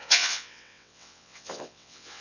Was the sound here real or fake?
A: fake